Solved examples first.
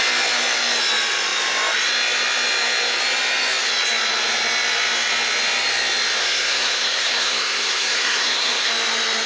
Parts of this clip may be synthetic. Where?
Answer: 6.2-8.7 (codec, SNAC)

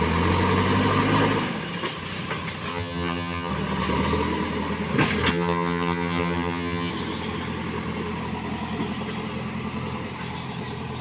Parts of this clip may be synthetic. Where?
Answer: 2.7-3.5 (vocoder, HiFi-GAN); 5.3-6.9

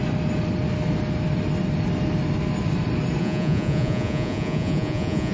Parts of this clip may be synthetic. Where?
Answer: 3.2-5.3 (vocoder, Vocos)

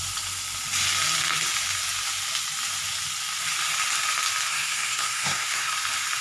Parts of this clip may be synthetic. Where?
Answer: 4.5-5.7 (codec, SNAC)

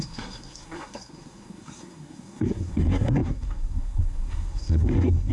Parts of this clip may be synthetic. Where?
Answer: 0.0-5.3 (codec, SNAC)